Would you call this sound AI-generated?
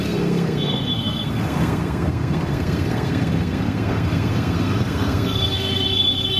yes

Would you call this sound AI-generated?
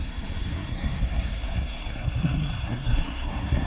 yes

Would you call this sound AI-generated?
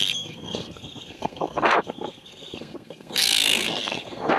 yes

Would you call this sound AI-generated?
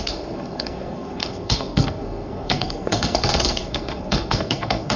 yes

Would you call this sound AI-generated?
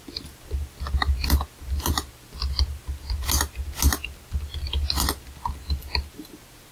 no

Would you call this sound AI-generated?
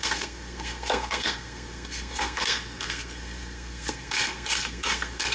yes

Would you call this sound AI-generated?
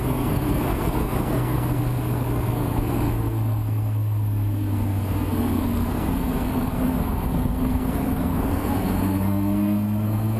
yes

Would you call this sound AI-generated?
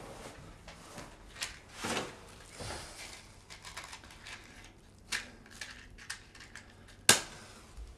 no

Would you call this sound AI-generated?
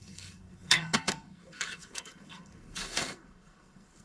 yes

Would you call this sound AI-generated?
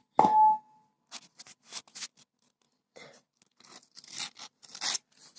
no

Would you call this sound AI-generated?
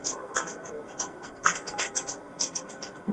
yes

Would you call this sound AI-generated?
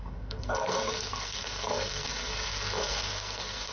yes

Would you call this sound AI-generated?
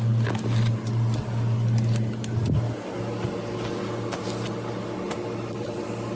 no